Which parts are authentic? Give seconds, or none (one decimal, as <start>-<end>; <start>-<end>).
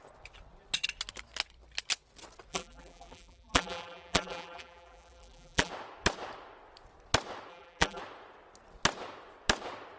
0.0-2.5; 5.7-7.5; 8.0-10.0